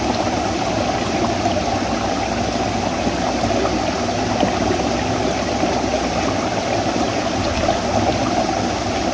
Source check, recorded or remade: recorded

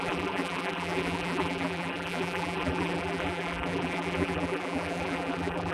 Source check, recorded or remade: remade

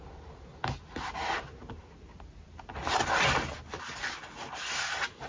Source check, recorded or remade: recorded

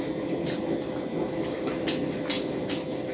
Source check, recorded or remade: recorded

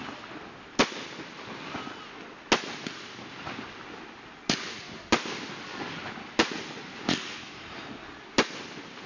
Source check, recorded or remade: recorded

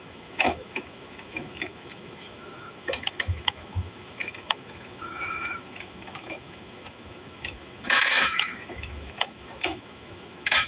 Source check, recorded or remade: remade